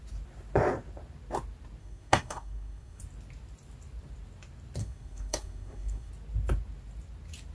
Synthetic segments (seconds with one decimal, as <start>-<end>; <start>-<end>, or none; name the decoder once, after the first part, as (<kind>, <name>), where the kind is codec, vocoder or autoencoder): 1.8-3.0 (codec, SNAC); 4.8-6.1